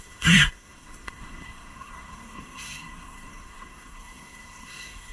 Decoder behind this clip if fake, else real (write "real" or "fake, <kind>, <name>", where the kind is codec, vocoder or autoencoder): fake, codec, SNAC